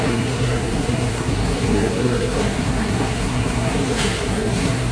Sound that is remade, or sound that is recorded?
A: remade